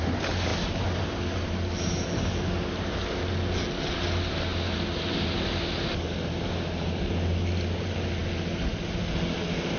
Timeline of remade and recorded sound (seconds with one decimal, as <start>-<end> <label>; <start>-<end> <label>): 0.0-9.8 recorded

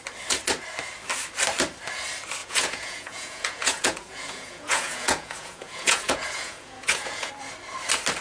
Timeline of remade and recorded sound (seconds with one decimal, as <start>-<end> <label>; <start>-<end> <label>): 0.0-2.4 recorded; 2.4-7.3 remade; 7.3-8.2 recorded

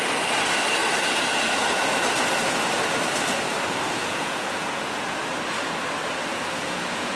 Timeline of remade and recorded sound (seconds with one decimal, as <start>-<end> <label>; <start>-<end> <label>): 0.0-4.0 recorded; 4.0-5.2 remade; 5.2-6.3 recorded; 6.3-7.2 remade

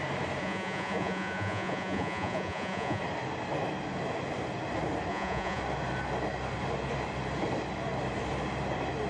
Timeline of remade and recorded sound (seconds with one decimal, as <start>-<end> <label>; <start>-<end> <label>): 0.0-0.4 recorded; 0.4-3.0 remade; 3.0-5.1 recorded; 5.1-5.6 remade; 5.6-9.1 recorded

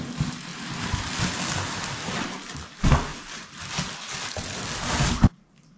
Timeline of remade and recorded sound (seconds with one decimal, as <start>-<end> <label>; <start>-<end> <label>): 0.0-5.8 recorded

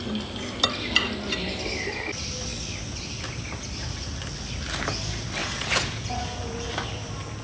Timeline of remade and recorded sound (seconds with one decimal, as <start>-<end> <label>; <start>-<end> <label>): 0.0-5.4 recorded; 5.4-6.7 remade; 6.7-7.4 recorded